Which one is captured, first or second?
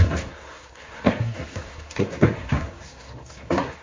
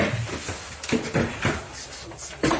second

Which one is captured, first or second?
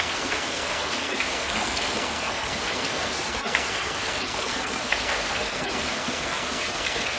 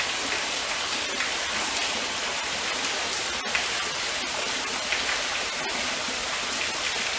second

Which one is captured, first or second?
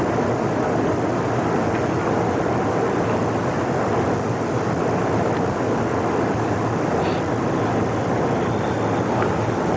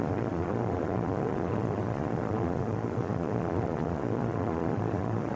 first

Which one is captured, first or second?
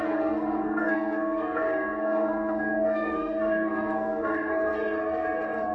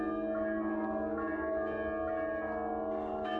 second